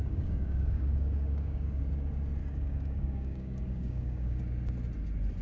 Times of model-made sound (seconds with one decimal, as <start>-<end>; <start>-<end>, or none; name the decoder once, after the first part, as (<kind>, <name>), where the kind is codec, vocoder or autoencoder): 0.0-1.8 (codec, DAC); 2.4-4.4